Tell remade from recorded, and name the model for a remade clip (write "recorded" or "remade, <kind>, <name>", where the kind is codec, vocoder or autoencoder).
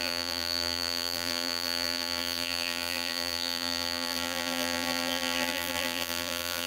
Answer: remade, vocoder, BigVGAN v2